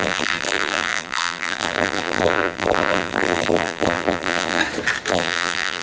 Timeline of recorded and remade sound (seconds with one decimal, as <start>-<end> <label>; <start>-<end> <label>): 0.0-4.6 remade; 4.6-5.1 recorded; 5.1-5.8 remade

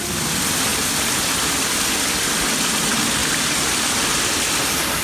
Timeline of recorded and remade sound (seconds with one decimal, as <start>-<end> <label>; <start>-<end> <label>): 0.0-5.0 recorded

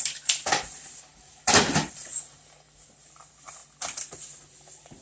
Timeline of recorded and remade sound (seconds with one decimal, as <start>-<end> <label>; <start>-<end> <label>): 0.0-5.0 remade